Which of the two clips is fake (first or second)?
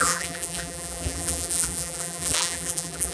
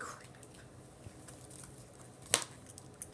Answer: first